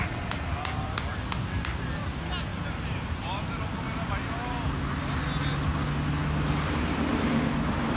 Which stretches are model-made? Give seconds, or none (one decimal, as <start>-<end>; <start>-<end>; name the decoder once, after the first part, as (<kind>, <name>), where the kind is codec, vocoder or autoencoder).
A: 2.5-3.6 (vocoder, BigVGAN v2)